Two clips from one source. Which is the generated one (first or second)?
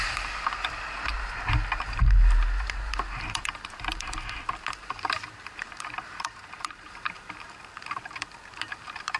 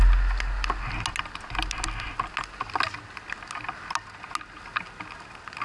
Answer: first